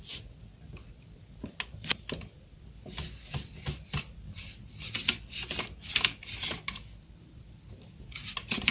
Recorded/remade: recorded